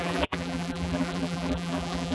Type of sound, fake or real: fake